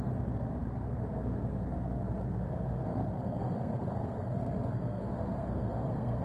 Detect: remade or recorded remade